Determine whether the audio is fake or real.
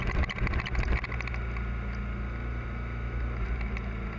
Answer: real